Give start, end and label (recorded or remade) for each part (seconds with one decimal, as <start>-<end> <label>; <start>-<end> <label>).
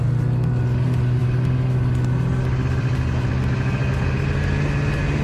0.0-5.2 recorded